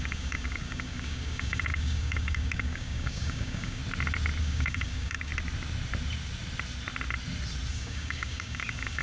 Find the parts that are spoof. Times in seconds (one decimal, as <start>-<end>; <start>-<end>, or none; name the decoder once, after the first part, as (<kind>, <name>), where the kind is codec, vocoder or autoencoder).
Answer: 0.0-3.8 (codec, DAC); 4.4-5.3; 7.7-9.0